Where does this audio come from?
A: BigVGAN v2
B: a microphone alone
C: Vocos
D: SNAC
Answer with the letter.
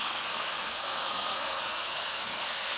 D